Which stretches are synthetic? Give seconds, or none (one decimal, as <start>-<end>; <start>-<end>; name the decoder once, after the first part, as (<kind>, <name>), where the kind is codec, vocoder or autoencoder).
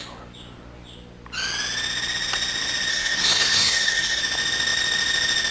2.9-4.2 (codec, SNAC)